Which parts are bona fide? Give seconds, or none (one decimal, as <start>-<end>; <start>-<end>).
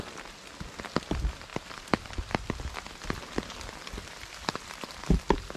0.0-5.6